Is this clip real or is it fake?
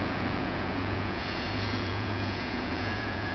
fake